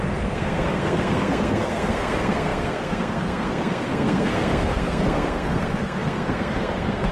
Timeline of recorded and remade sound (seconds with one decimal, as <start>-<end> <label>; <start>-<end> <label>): 0.0-7.1 remade